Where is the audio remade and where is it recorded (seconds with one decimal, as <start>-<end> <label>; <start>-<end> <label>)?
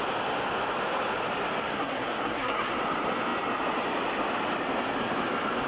0.0-1.7 recorded; 1.7-2.7 remade; 2.7-5.7 recorded